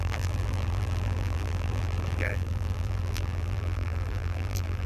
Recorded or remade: remade